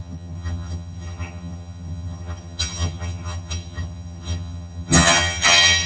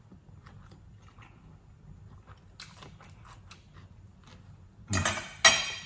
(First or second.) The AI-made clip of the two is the first